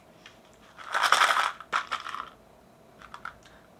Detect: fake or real real